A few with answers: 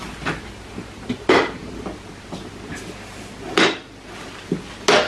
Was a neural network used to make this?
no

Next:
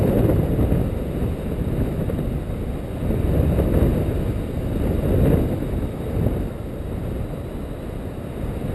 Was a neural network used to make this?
no